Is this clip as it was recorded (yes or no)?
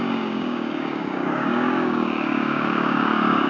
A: no